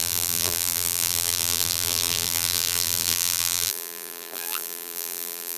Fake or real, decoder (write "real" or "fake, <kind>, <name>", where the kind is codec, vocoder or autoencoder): fake, vocoder, BigVGAN v2